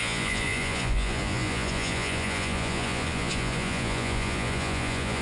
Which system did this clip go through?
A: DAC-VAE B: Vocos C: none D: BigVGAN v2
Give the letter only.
B